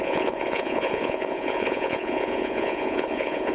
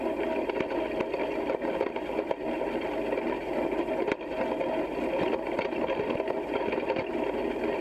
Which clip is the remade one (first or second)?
first